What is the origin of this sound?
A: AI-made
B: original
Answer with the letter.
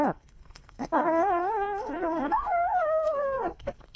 A